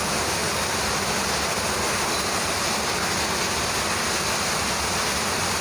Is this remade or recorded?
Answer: recorded